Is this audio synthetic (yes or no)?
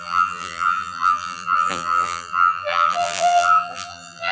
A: yes